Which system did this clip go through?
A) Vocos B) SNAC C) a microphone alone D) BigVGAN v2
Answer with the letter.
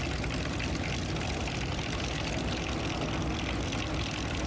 C